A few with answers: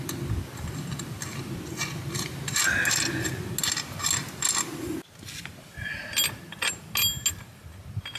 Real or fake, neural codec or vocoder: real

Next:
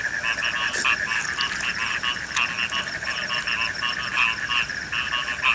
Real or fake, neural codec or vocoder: real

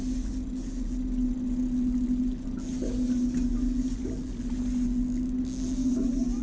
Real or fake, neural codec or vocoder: real